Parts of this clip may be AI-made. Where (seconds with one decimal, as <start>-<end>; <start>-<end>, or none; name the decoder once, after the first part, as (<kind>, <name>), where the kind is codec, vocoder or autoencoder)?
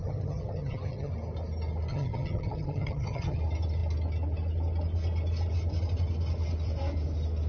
0.0-1.1 (vocoder, HiFi-GAN); 1.9-3.4